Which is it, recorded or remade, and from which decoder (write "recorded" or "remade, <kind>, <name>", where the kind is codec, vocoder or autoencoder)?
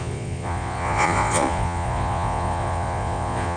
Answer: remade, vocoder, Vocos